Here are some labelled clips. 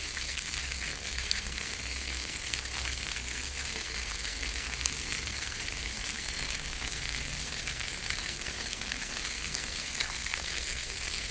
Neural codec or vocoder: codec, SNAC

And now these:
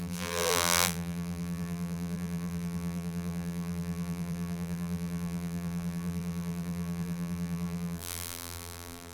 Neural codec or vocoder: vocoder, BigVGAN v2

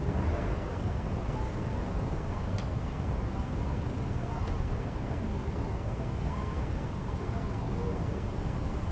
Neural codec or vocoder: codec, SNAC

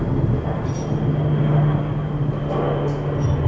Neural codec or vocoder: none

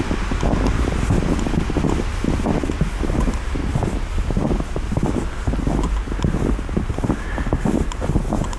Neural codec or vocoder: none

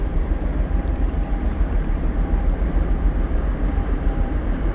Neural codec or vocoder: vocoder, BigVGAN v2